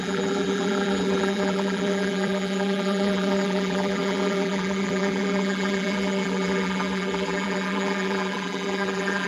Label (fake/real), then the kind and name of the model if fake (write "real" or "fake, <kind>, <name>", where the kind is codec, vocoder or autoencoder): fake, vocoder, BigVGAN v2